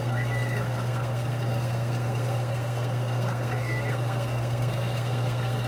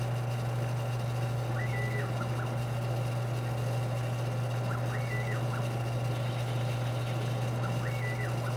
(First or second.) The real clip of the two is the second